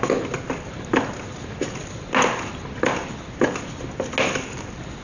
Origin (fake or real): real